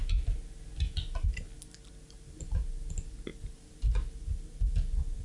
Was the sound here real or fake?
real